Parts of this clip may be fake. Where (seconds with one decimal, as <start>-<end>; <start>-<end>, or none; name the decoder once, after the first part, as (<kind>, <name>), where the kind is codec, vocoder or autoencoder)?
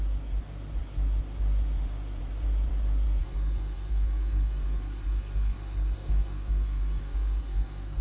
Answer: 3.2-8.0 (codec, SNAC)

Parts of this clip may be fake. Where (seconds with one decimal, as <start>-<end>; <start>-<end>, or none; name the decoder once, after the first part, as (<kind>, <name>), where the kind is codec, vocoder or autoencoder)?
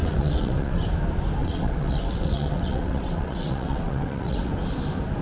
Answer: 0.0-0.8 (vocoder, WaveNeXt); 1.4-4.5